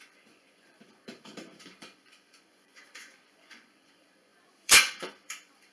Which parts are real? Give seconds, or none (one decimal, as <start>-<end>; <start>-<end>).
none